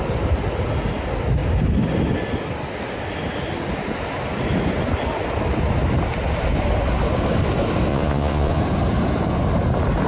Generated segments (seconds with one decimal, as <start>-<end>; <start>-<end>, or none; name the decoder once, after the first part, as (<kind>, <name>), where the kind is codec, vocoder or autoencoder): 7.9-8.6 (vocoder, Vocos)

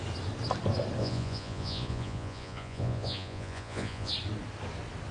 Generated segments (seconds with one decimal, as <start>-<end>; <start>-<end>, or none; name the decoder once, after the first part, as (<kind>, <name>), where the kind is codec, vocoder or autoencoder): 1.0-4.1 (vocoder, Vocos)

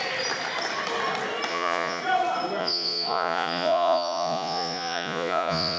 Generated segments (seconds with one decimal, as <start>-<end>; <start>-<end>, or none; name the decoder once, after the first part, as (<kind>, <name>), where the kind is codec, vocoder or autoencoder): 1.5-2.0 (vocoder, Vocos); 2.6-5.8

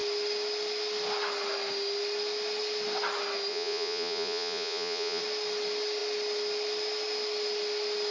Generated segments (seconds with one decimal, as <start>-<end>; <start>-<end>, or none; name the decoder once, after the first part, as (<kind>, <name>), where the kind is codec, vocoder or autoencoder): 3.5-5.2 (vocoder, Vocos)

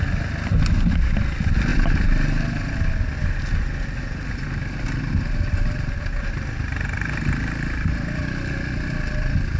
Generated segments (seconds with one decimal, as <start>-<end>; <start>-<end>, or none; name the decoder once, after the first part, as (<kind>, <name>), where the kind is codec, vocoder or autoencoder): none